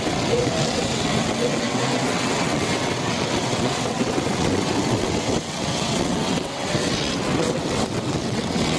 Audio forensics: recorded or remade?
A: remade